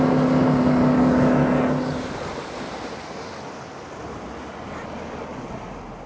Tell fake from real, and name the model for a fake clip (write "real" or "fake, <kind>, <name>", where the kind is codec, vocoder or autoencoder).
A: real